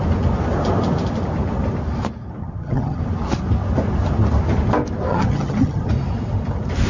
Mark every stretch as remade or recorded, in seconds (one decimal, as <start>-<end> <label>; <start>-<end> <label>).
0.0-2.4 recorded; 2.4-3.0 remade; 3.0-5.1 recorded; 5.1-5.9 remade; 5.9-6.9 recorded